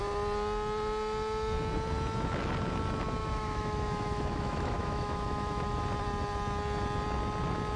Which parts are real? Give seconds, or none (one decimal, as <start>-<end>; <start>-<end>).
0.0-3.2; 5.8-7.8